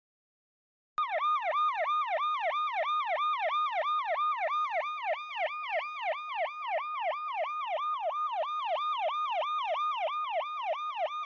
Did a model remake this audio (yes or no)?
no